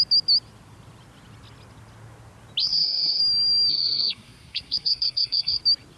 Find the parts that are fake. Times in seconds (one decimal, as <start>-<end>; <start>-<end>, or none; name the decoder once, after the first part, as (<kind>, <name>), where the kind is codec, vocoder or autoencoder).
2.6-3.2 (codec, SNAC); 3.7-5.6